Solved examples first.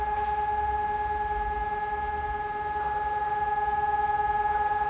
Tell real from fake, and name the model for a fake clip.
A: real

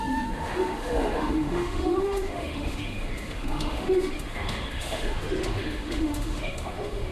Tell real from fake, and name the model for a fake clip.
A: fake, autoencoder, DAC-VAE